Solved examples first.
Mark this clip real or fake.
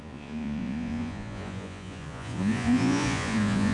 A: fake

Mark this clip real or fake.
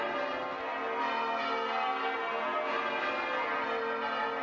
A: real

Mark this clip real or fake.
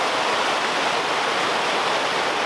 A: real